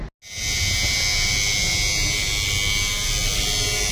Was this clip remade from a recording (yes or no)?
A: no